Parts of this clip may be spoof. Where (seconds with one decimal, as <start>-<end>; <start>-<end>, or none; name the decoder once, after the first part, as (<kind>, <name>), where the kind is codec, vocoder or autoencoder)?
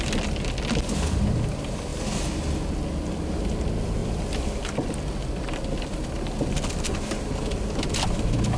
none